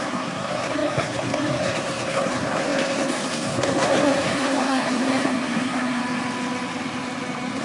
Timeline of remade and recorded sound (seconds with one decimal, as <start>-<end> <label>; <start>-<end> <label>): 0.0-6.0 remade; 6.0-7.6 recorded